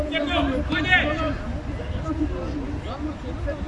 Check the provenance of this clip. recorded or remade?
recorded